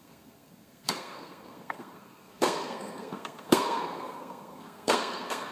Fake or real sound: fake